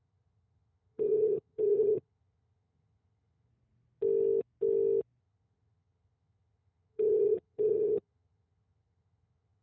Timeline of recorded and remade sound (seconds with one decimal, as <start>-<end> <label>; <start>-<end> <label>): 0.0-3.5 remade; 3.5-5.2 recorded; 5.2-9.6 remade

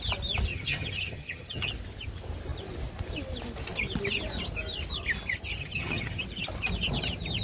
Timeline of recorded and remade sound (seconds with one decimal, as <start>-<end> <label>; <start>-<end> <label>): 0.0-0.5 recorded; 0.5-1.7 remade; 1.7-5.6 recorded; 5.6-6.2 remade; 6.2-7.4 recorded

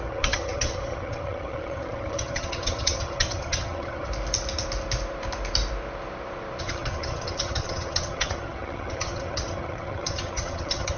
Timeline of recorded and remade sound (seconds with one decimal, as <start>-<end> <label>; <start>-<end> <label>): 0.0-4.1 remade; 4.1-6.6 recorded; 6.6-11.0 remade

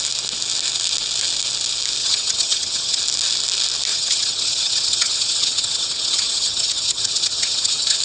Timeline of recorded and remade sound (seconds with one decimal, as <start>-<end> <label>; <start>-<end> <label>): 0.0-2.0 recorded; 2.0-3.0 remade; 3.0-3.9 recorded; 3.9-8.0 remade

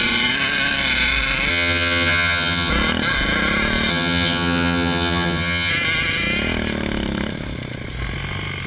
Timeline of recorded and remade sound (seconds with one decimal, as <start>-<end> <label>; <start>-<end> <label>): 0.0-1.5 recorded; 1.5-2.7 remade; 2.7-3.9 recorded; 3.9-5.7 remade; 5.7-8.7 recorded

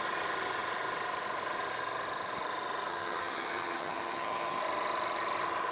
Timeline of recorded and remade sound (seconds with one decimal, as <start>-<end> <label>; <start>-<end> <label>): 0.0-2.9 recorded; 2.9-4.6 remade; 4.6-5.7 recorded

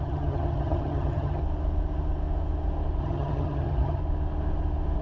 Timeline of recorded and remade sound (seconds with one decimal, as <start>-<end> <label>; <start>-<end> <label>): 0.0-1.4 remade; 1.4-3.0 recorded; 3.0-4.0 remade; 4.0-5.0 recorded